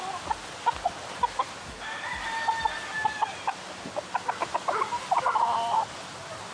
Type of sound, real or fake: real